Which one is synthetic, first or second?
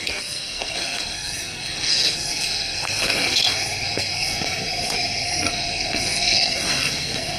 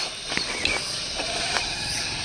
first